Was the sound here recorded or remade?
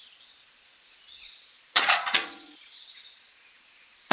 remade